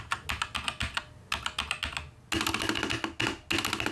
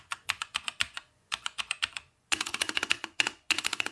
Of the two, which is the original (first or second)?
first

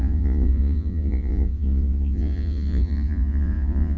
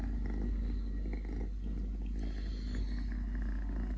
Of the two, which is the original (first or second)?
second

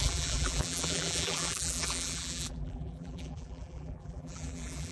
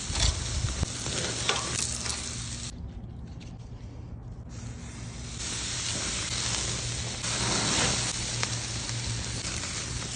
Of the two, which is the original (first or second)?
second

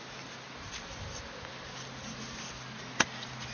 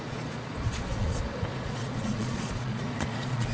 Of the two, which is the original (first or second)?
first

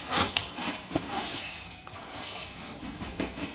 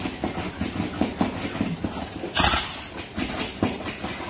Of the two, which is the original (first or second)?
second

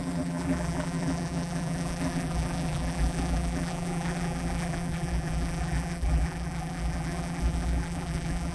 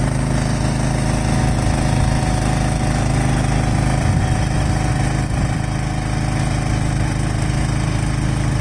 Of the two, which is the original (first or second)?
second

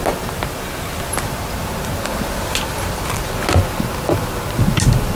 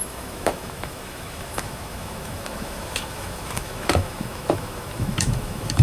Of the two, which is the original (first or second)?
first